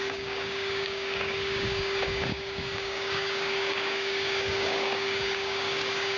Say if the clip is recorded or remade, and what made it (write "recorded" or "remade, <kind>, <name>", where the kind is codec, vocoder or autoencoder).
remade, codec, DAC